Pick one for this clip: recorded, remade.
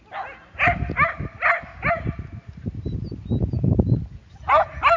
recorded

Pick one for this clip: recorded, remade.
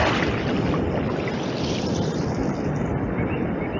recorded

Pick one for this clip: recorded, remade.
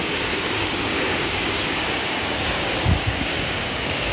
remade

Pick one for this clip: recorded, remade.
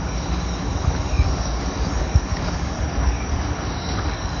remade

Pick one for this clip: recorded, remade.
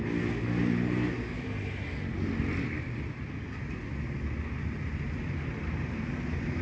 recorded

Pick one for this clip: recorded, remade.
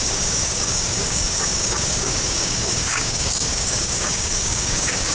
remade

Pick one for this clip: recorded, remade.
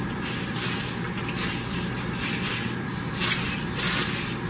recorded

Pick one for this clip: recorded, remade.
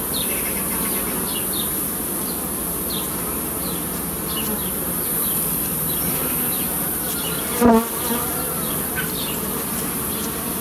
recorded